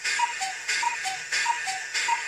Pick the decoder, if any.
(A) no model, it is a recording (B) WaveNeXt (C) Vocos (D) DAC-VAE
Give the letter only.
D